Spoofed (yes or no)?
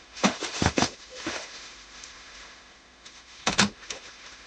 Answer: yes